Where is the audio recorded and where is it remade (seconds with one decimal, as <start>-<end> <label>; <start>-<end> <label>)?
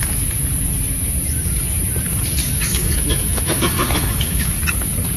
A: 0.0-2.4 recorded; 2.4-4.6 remade; 4.6-5.2 recorded